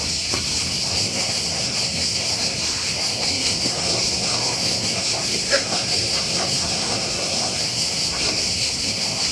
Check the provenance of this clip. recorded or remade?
remade